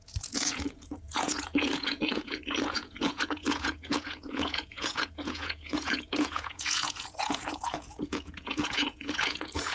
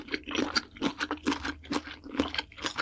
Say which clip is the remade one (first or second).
first